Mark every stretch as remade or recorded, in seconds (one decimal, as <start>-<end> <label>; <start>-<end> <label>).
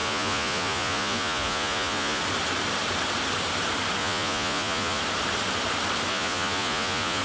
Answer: 0.0-2.2 remade; 2.2-4.0 recorded; 4.0-5.0 remade; 5.0-6.1 recorded; 6.1-7.2 remade